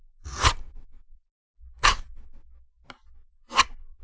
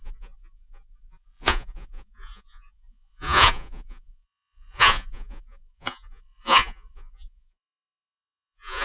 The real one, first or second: first